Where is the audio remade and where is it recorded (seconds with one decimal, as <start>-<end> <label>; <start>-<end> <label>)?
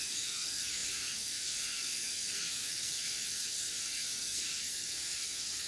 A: 0.0-5.7 remade